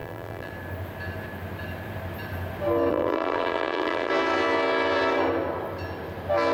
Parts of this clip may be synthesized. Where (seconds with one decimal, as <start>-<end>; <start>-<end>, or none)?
0.0-0.5; 2.9-4.1

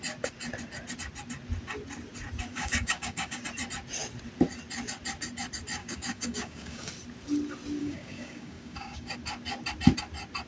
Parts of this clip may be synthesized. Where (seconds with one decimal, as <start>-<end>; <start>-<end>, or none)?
2.5-3.4; 5.8-6.9; 7.8-9.1

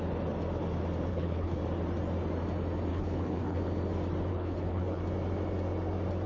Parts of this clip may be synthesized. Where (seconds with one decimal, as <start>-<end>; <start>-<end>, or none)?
1.1-1.6; 2.9-3.6; 4.3-5.0

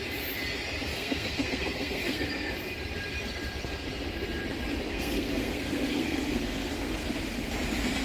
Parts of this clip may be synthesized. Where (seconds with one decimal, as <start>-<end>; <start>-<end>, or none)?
0.9-2.3; 4.9-7.1

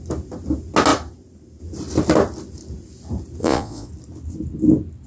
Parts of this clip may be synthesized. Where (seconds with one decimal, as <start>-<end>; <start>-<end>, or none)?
3.4-3.9